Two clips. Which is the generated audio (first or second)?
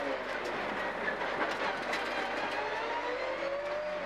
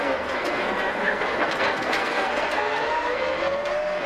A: second